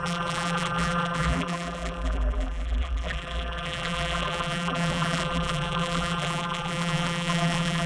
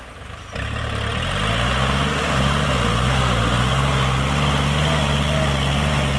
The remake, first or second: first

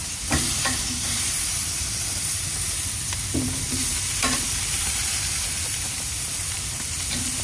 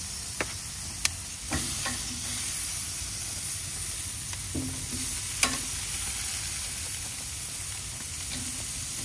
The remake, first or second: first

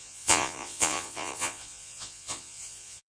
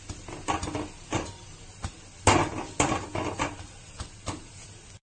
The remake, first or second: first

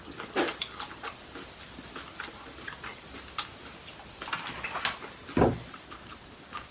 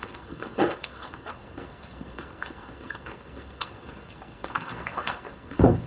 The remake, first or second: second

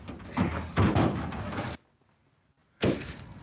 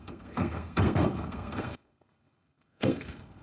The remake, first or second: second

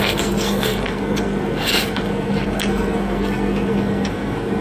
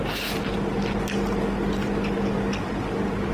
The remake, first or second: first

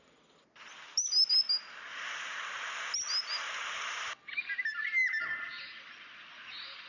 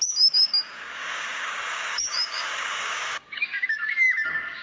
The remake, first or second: second